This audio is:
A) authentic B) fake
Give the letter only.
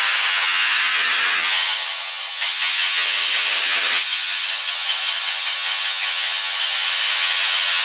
B